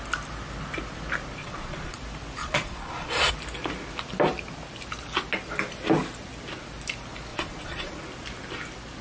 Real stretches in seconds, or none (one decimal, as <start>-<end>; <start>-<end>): 0.0-1.4; 2.0-2.4; 3.3-7.3; 8.0-9.0